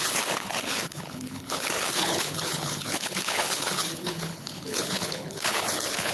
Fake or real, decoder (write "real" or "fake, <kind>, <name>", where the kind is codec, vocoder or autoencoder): fake, codec, HILCodec